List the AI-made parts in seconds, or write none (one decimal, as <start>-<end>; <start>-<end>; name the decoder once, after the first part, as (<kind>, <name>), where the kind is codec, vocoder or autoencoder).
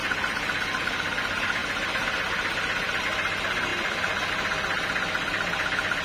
none